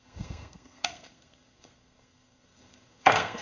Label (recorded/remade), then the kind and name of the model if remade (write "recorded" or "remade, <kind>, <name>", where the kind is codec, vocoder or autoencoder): remade, codec, SNAC